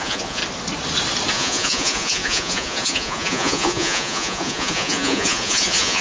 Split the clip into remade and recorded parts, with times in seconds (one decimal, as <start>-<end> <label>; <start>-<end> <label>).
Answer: 0.0-0.4 remade; 0.4-1.3 recorded; 1.3-6.0 remade